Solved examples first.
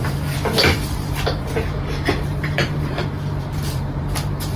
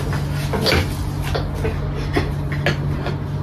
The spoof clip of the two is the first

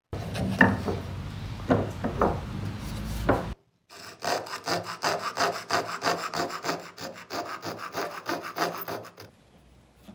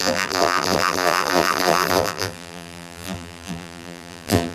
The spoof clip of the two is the second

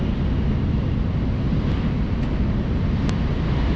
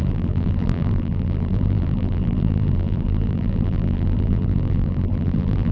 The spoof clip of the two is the second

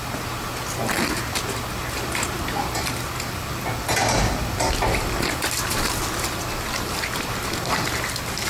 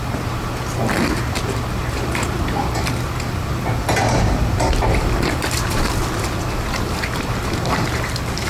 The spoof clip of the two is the second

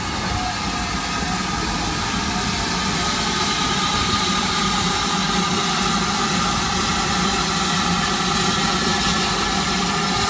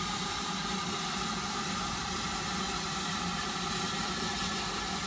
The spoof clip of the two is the second